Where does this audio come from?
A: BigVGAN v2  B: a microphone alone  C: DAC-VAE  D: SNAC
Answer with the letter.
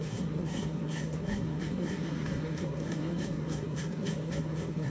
D